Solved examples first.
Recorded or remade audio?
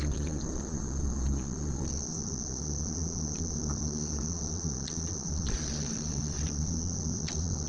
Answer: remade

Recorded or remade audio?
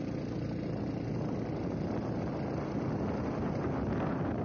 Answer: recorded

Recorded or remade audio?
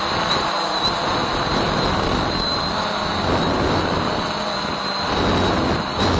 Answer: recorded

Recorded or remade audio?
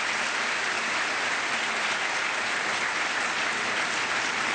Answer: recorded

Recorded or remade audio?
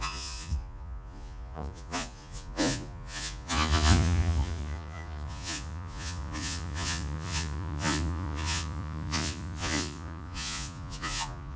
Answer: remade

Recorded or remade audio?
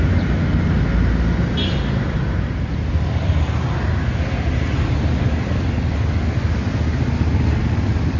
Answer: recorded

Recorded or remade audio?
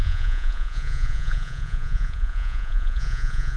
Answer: remade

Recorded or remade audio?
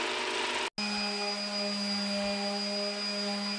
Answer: recorded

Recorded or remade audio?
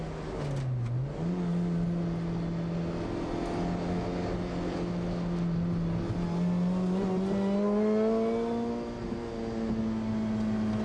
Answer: recorded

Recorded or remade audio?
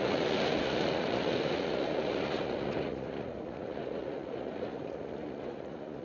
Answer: remade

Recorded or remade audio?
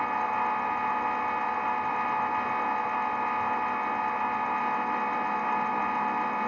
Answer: recorded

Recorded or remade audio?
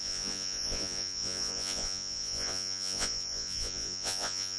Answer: remade